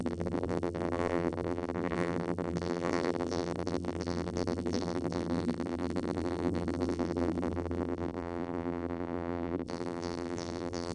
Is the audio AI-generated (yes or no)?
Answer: yes